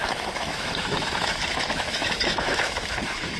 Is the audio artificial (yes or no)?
yes